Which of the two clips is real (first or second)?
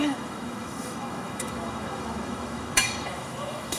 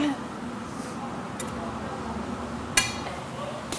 second